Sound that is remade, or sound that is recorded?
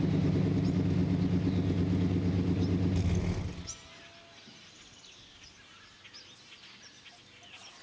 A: recorded